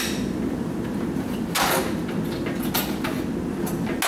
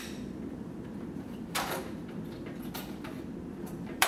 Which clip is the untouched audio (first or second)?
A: first